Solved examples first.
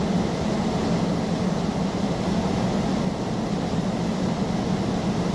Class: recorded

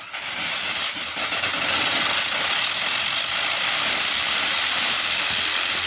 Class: recorded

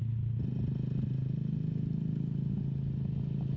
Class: recorded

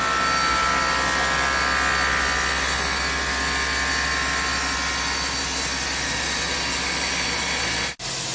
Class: recorded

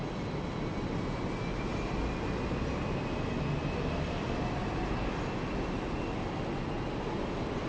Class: recorded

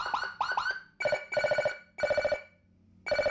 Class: recorded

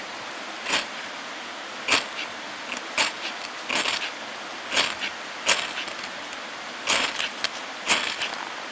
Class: recorded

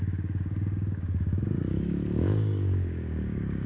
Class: remade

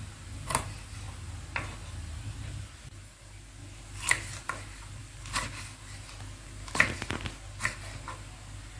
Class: recorded